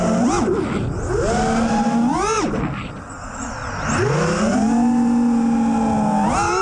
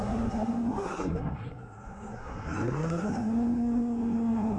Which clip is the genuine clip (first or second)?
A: first